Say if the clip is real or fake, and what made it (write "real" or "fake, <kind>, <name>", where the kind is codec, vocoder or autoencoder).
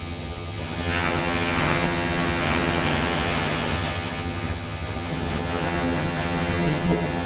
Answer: fake, vocoder, HiFi-GAN